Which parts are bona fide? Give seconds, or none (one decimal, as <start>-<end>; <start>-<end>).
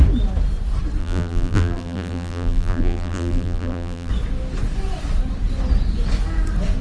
0.0-1.0; 4.1-6.8